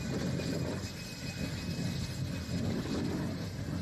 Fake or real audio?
real